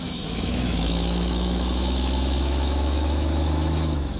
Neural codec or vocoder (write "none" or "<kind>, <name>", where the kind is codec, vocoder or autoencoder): autoencoder, DAC-VAE